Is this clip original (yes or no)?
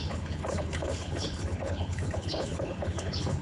no